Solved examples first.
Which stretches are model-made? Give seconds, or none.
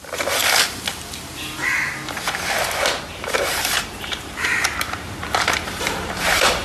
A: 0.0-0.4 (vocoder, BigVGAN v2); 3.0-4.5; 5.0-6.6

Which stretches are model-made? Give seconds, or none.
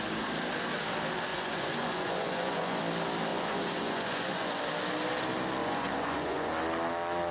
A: 1.3-2.8 (vocoder, Vocos); 3.3-4.6; 5.6-6.5